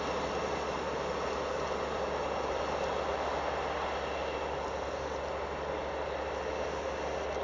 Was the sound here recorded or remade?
recorded